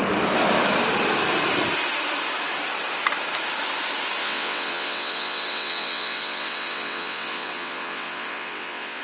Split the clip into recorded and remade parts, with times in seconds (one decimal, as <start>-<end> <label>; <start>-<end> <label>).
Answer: 0.0-4.2 recorded; 4.2-9.0 remade